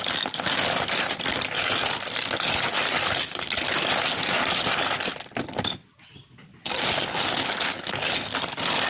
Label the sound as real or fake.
real